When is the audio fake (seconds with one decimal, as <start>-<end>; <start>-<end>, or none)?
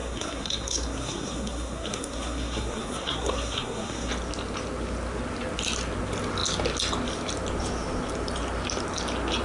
0.0-4.1